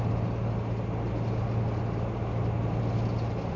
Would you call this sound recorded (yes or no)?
yes